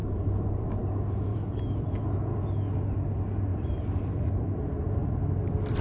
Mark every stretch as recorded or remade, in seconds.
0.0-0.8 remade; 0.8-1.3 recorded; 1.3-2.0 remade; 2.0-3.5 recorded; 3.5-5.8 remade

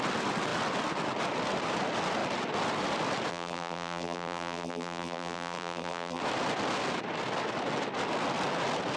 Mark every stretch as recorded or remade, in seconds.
0.0-3.3 recorded; 3.3-6.2 remade; 6.2-9.0 recorded

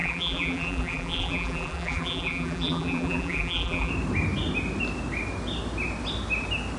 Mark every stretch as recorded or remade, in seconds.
0.0-3.9 remade; 3.9-6.8 recorded